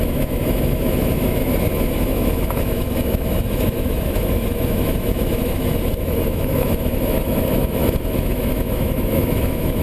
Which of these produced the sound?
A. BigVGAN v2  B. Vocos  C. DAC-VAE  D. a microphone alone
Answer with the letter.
C